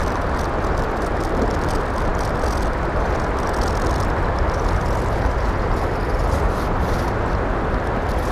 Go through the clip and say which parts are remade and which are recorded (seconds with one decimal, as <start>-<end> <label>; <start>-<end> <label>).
0.0-8.3 recorded